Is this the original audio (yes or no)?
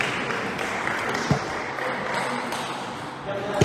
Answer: yes